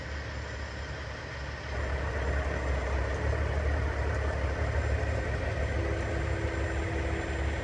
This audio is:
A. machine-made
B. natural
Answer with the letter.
B